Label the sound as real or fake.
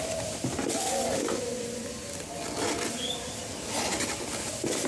real